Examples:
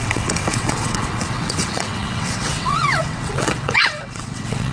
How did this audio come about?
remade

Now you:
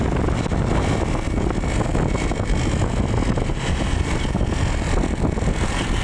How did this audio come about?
recorded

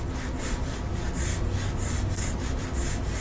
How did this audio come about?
recorded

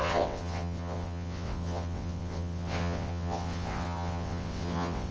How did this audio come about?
remade